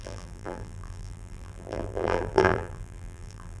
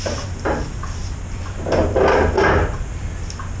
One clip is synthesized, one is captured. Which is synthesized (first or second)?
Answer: first